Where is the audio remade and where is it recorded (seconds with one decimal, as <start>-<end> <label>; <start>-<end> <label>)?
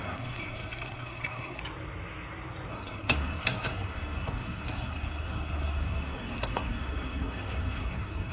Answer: 0.0-1.6 remade; 1.6-2.7 recorded; 2.7-8.3 remade